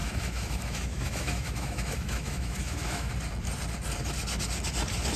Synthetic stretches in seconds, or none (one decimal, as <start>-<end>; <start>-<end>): 0.0-3.1